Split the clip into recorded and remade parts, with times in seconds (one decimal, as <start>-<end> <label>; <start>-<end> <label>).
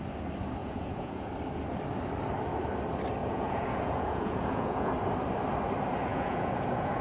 0.0-0.6 recorded; 0.6-1.3 remade; 1.3-3.2 recorded; 3.2-4.9 remade; 4.9-6.1 recorded; 6.1-7.0 remade